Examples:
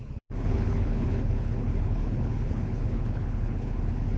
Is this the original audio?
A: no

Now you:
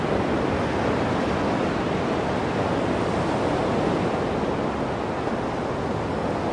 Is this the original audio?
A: yes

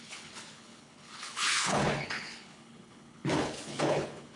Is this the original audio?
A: no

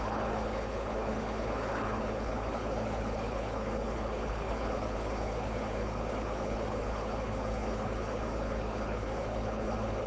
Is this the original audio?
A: no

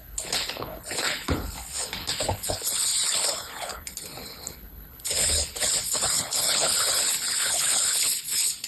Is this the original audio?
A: no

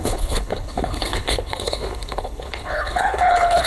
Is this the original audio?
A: no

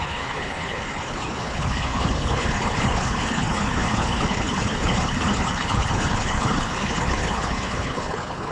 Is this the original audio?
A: no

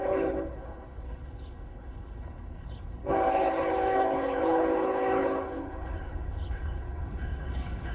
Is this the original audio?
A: no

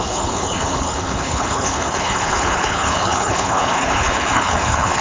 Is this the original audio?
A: no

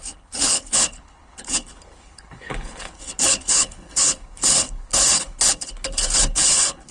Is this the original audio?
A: no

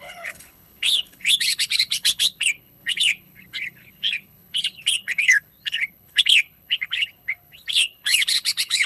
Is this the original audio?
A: no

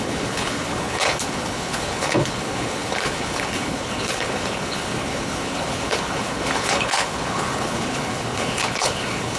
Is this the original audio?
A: no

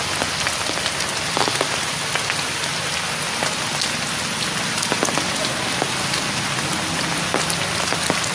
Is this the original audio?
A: yes